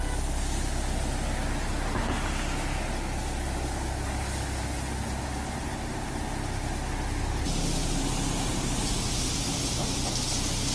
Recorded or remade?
recorded